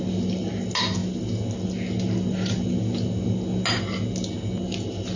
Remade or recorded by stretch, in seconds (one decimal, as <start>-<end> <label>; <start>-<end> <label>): 0.0-5.2 recorded